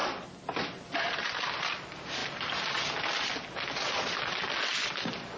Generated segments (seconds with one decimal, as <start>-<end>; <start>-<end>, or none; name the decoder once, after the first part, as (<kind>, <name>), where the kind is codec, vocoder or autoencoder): none